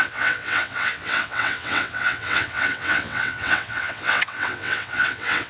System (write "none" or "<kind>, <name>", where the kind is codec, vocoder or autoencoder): vocoder, WaveNeXt